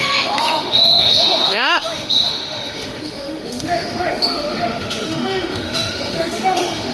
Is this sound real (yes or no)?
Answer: no